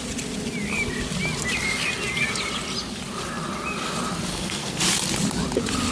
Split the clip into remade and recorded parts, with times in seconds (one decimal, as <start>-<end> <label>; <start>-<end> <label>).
0.0-4.3 recorded; 4.3-4.8 remade; 4.8-5.9 recorded